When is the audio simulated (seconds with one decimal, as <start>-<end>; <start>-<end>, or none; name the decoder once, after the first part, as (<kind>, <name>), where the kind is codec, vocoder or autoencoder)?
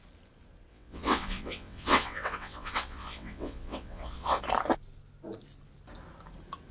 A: 0.7-4.4 (vocoder, WaveNeXt)